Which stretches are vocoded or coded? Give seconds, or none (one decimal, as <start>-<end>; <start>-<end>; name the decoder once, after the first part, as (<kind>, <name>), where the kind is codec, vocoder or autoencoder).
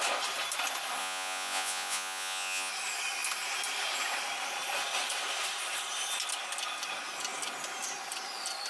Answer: 1.0-2.7 (vocoder, Vocos)